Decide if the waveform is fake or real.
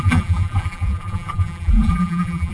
fake